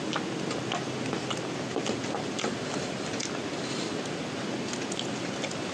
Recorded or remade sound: recorded